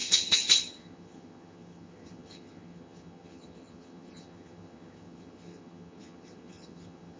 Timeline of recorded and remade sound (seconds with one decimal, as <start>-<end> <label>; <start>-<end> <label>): 0.0-7.2 remade